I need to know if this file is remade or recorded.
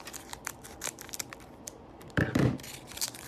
remade